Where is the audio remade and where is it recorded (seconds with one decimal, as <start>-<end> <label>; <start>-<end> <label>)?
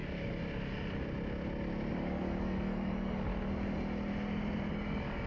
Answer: 0.0-1.9 recorded; 1.9-3.3 remade; 3.3-4.7 recorded; 4.7-5.3 remade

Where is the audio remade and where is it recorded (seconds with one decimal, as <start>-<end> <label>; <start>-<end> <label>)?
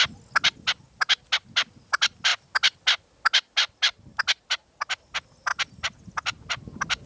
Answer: 0.0-7.1 recorded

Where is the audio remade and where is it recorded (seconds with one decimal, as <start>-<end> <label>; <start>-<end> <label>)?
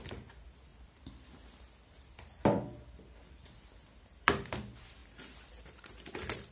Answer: 0.0-5.0 remade; 5.0-5.5 recorded; 5.5-6.5 remade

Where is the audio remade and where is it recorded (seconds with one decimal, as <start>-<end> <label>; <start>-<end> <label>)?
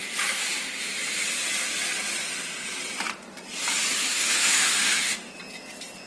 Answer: 0.0-4.0 recorded; 4.0-5.3 remade; 5.3-6.1 recorded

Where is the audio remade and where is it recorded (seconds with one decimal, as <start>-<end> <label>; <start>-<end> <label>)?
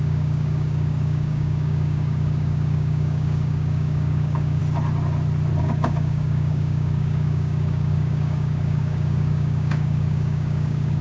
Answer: 0.0-4.6 remade; 4.6-5.6 recorded; 5.6-11.0 remade